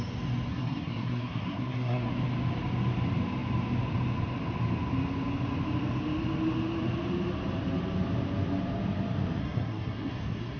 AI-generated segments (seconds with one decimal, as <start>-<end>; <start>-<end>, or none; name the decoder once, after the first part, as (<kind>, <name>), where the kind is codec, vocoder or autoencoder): 0.5-2.1 (codec, SNAC); 9.4-10.6